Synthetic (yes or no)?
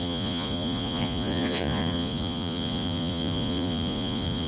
yes